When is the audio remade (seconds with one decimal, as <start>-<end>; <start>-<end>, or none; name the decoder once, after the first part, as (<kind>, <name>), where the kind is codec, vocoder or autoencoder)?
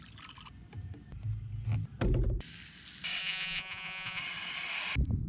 3.2-4.2 (vocoder, Vocos)